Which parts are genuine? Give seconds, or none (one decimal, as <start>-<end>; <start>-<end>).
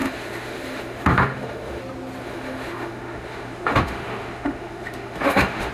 1.8-2.2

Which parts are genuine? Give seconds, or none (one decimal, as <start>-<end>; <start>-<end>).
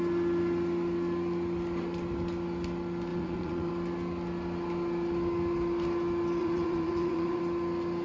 0.0-3.1; 3.7-6.4; 7.4-8.0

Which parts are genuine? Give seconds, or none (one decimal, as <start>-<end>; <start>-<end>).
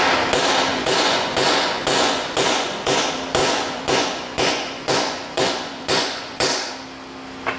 0.0-0.7; 3.0-3.4; 6.7-7.6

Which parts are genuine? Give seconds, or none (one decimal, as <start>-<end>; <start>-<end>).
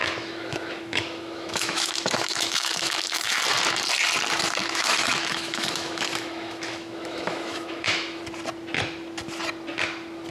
3.4-4.6; 8.2-10.3